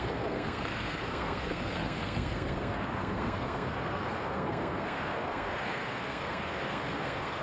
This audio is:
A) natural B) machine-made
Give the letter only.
B